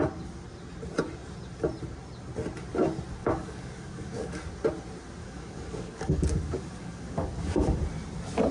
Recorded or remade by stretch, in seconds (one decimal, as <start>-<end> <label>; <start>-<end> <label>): 0.0-3.2 recorded; 3.2-4.4 remade; 4.4-5.2 recorded; 5.2-7.8 remade; 7.8-8.5 recorded